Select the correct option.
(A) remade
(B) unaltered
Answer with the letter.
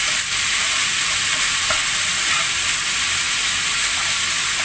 B